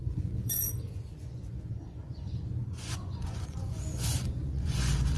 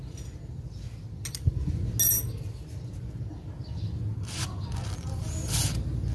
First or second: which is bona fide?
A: second